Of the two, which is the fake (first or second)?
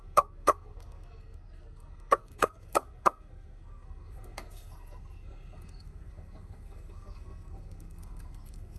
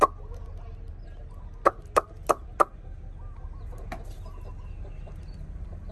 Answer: first